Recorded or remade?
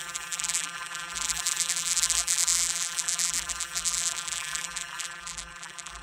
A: remade